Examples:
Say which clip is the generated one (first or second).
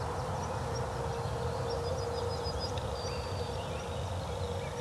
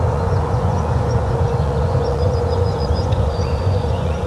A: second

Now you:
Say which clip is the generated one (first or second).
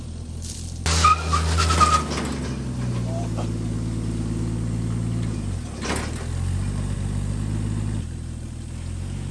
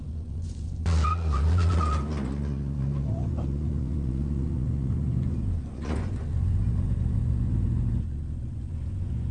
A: second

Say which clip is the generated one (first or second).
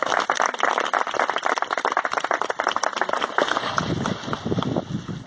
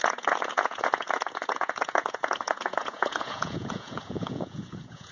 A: second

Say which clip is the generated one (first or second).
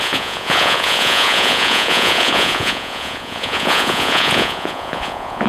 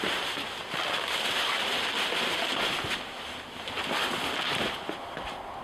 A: first